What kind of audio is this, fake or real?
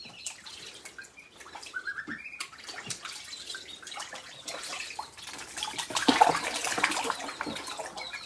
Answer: real